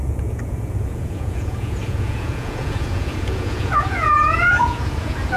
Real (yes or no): no